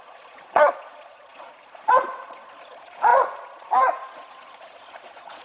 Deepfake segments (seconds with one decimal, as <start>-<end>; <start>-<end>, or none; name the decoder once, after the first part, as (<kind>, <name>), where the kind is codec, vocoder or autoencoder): 0.0-5.4 (vocoder, Vocos)